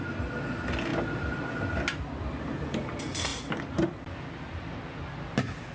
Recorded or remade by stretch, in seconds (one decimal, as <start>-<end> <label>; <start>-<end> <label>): 0.0-5.7 recorded